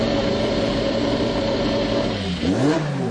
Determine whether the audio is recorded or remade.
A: remade